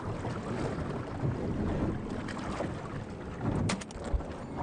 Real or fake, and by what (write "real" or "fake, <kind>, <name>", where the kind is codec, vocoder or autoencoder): real